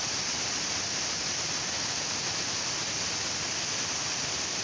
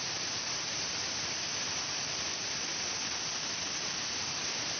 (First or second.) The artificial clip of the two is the second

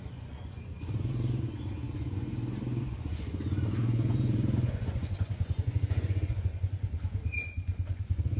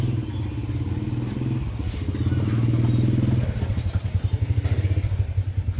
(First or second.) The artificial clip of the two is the first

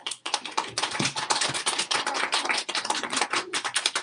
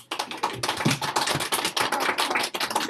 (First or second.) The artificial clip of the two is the first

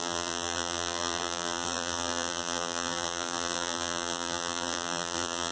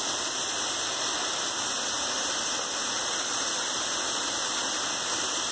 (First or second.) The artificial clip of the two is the first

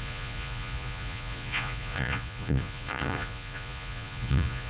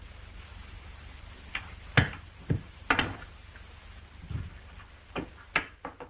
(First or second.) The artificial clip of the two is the first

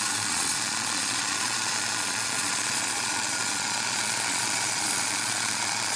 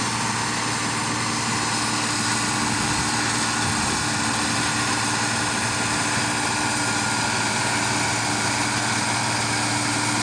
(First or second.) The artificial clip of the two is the first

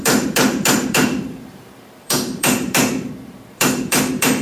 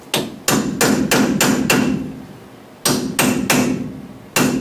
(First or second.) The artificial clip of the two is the first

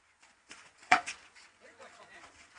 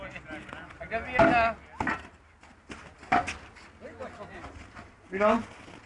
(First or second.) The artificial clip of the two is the first